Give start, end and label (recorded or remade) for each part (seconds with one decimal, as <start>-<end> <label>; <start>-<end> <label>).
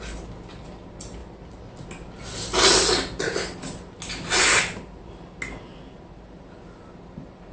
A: 0.0-7.5 recorded